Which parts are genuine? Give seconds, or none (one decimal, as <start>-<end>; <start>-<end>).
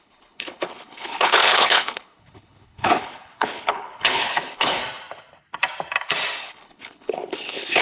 4.8-6.4